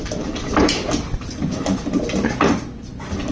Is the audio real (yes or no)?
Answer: yes